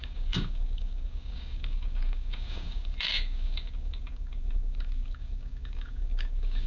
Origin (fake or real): fake